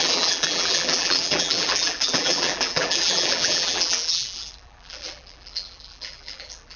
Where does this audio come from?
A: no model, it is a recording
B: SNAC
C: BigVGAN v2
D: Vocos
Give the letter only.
C